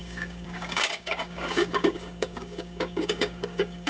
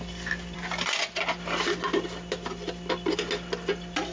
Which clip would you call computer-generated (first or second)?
first